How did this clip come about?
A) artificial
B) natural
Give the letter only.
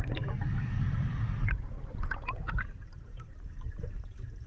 B